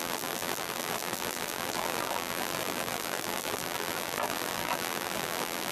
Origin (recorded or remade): remade